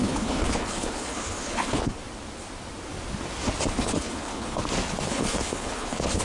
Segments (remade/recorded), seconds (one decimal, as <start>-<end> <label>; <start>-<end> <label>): 0.0-2.0 remade; 2.0-3.7 recorded; 3.7-4.6 remade; 4.6-5.1 recorded; 5.1-6.2 remade